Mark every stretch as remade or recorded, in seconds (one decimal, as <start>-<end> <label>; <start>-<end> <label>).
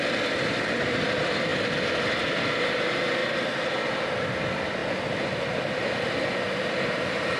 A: 0.0-1.5 remade; 1.5-2.4 recorded; 2.4-3.2 remade; 3.2-4.3 recorded; 4.3-4.8 remade; 4.8-5.5 recorded; 5.5-7.4 remade